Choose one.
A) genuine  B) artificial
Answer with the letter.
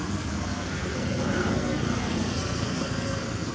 B